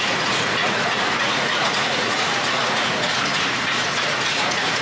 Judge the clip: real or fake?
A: fake